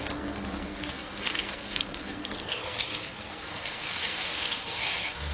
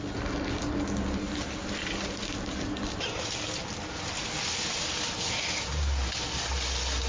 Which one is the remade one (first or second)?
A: first